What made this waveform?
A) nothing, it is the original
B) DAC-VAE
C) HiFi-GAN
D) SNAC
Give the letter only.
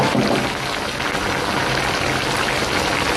A